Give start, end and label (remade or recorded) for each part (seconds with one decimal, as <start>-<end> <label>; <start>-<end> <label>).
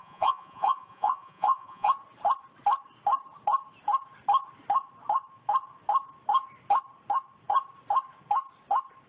0.0-1.9 remade; 1.9-9.1 recorded